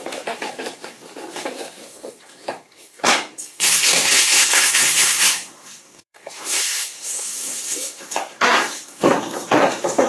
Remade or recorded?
remade